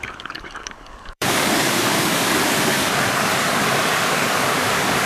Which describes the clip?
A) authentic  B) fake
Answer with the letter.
B